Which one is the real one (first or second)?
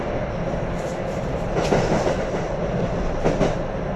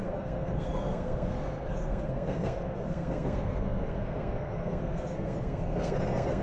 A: first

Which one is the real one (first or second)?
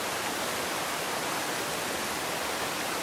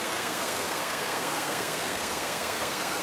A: first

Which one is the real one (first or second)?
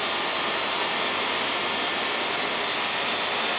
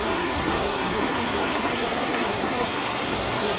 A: first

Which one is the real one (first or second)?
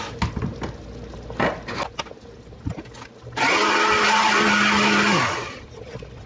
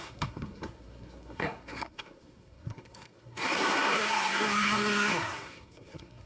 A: first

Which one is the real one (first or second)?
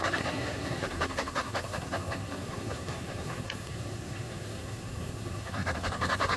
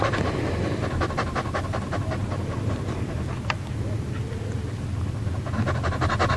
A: second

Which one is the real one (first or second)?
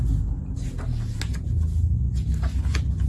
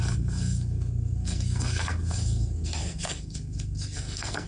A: first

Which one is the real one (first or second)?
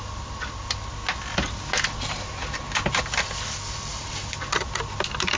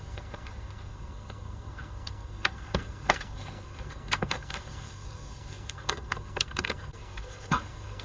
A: first